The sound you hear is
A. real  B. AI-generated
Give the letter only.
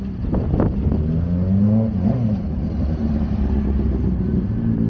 A